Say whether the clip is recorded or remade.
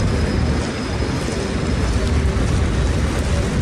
recorded